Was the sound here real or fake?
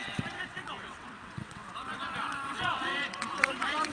fake